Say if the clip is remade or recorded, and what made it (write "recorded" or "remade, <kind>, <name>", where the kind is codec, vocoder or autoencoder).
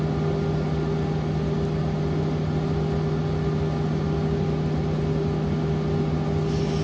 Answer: recorded